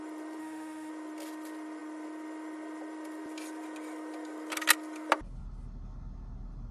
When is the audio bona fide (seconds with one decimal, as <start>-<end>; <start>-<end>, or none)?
0.0-0.4; 0.9-6.7